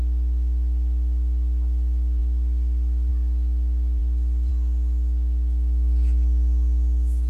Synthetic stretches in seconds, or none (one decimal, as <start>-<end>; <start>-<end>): none

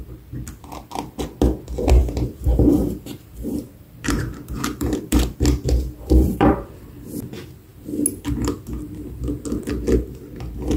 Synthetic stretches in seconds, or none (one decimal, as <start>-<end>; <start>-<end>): 2.0-6.5

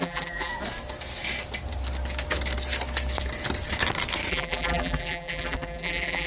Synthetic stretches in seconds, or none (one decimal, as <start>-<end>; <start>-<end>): 0.0-0.5; 4.3-6.3

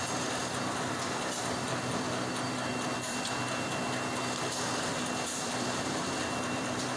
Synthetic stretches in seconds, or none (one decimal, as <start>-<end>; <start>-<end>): 0.4-2.1; 2.7-7.0